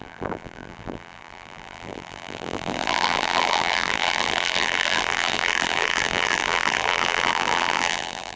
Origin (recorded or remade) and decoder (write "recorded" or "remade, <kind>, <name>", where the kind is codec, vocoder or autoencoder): remade, vocoder, BigVGAN v2